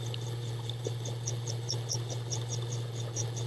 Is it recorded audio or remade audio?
recorded